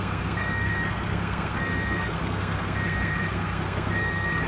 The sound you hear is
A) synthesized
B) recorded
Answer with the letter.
A